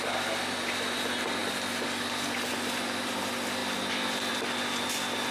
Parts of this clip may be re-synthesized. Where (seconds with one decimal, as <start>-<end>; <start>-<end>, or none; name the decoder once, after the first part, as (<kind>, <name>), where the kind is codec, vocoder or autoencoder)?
none